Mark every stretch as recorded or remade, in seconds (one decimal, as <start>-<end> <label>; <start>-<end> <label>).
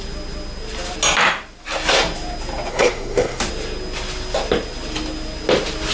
0.0-2.7 recorded; 2.7-3.4 remade; 3.4-5.9 recorded